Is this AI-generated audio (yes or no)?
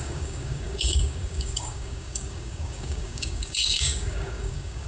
yes